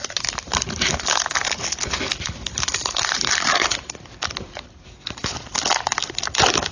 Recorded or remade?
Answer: recorded